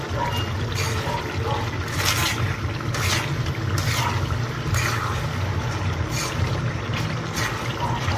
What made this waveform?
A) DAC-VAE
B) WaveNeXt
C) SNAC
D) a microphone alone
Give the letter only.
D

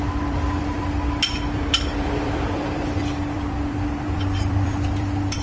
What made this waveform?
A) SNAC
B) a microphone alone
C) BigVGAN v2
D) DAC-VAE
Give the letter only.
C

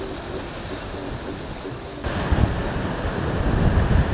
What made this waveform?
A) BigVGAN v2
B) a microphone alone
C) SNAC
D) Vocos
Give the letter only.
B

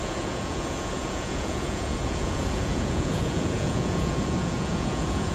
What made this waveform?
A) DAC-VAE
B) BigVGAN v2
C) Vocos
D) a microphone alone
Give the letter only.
C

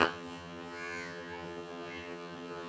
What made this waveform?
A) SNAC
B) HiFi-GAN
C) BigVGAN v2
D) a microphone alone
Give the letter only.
B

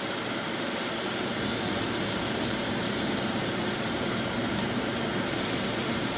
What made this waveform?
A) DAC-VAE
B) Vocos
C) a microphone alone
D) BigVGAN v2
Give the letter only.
D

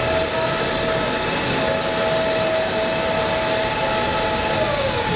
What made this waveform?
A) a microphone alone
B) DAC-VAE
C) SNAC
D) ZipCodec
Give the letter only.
A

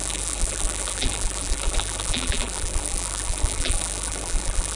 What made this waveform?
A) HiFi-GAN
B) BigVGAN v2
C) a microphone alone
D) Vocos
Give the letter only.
B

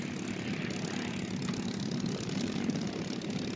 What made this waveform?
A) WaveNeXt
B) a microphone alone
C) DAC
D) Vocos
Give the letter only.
B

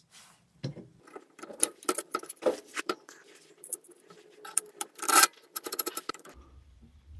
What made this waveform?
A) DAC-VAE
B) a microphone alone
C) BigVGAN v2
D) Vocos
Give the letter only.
C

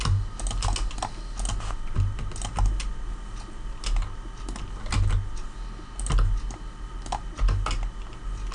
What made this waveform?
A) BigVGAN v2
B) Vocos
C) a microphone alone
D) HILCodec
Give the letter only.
C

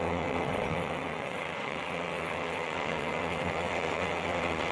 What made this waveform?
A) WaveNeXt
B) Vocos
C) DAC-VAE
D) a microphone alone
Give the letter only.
A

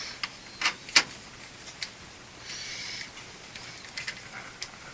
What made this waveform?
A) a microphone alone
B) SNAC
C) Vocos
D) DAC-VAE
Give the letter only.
A